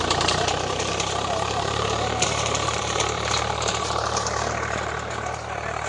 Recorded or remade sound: remade